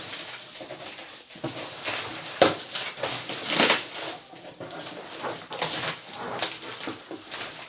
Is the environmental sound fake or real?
real